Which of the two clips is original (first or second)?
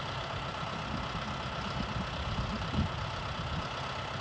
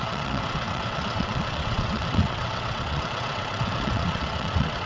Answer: first